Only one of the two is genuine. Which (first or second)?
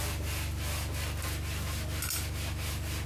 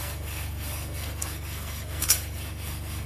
first